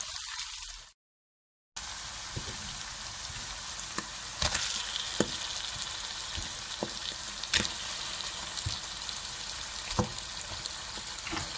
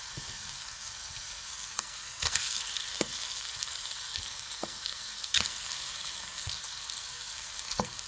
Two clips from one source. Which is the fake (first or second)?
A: second